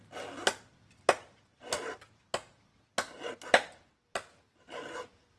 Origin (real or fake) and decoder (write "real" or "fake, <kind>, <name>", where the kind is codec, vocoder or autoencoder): real